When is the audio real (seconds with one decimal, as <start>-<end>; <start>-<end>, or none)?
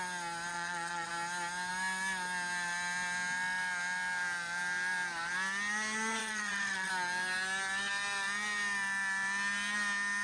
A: 0.0-0.5; 1.1-6.2; 6.9-10.2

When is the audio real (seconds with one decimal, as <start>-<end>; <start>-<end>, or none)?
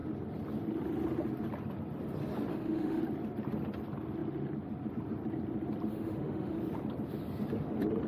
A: 0.0-2.5; 3.0-5.9; 6.6-8.1